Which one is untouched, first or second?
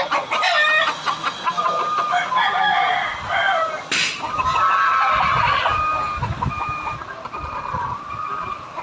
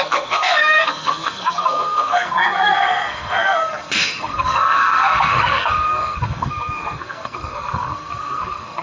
first